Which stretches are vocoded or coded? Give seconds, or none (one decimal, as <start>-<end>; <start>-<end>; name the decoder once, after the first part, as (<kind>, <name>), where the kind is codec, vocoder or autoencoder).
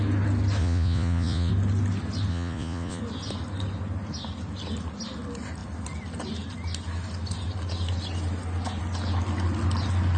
0.6-1.5 (vocoder, Vocos); 2.3-3.0